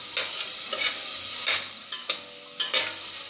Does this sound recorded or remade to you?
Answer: recorded